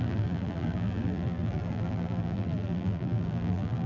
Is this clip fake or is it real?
fake